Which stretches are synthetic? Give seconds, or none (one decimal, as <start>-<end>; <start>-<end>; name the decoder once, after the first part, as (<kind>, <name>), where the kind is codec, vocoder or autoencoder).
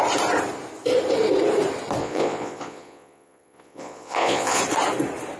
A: 2.0-4.6 (vocoder, Vocos)